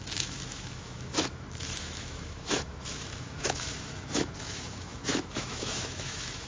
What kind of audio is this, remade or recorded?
remade